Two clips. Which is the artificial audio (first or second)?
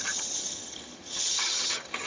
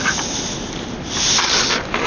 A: first